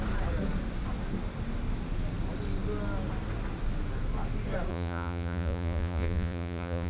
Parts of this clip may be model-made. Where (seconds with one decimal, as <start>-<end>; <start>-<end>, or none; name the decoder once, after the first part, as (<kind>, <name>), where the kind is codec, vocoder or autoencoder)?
4.7-6.9 (vocoder, Vocos)